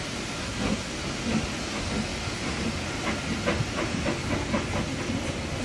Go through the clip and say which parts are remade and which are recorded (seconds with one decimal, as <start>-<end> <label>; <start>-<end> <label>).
0.0-0.4 recorded; 0.4-0.9 remade; 0.9-5.6 recorded